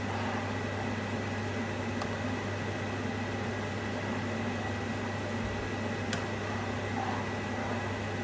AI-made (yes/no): no